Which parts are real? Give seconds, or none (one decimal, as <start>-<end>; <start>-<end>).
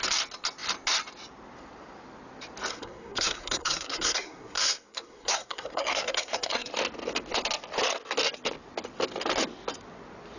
0.0-2.7; 6.7-10.4